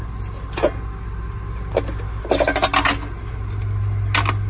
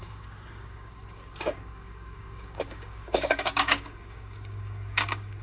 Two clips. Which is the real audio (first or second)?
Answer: first